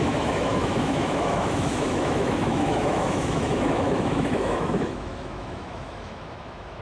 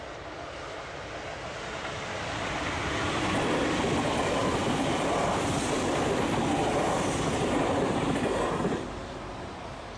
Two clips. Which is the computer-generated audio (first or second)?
first